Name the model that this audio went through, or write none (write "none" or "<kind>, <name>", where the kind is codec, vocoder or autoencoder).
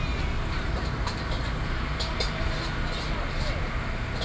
none